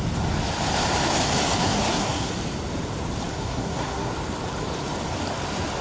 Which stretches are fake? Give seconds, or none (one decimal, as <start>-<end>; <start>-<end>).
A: 1.6-2.3; 3.3-4.1

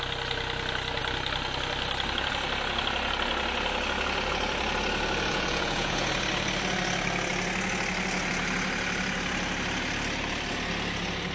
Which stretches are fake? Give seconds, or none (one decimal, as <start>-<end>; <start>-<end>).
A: 5.3-6.1